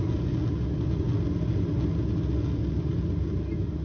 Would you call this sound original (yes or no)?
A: yes